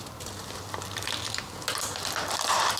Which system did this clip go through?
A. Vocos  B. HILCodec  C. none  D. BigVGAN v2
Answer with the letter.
D